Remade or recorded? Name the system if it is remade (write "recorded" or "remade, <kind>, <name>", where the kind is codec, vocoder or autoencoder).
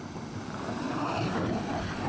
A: recorded